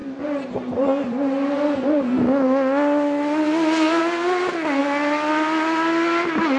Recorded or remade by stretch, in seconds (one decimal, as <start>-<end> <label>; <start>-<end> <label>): 0.0-6.6 recorded